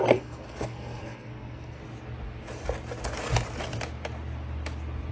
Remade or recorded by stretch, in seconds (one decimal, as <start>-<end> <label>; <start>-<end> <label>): 0.0-1.8 remade; 1.8-5.1 recorded

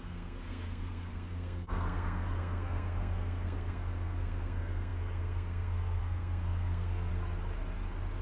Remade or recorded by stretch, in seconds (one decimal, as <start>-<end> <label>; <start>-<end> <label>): 0.0-7.1 remade; 7.1-8.2 recorded

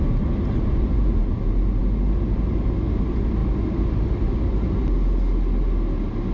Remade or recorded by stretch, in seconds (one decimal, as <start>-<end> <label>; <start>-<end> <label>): 0.0-6.3 recorded

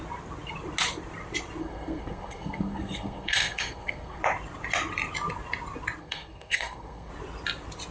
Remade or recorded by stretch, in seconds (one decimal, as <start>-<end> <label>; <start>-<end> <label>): 0.0-1.6 recorded; 1.6-4.2 remade; 4.2-6.0 recorded; 6.0-7.1 remade; 7.1-7.9 recorded

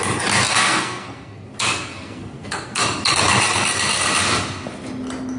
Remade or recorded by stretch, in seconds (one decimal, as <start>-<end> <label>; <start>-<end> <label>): 0.0-0.5 recorded; 0.5-2.8 remade; 2.8-5.4 recorded

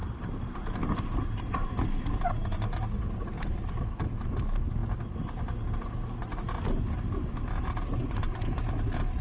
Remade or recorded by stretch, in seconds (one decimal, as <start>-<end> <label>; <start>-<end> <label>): 0.0-9.2 recorded